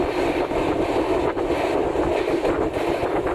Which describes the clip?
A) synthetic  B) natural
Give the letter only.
B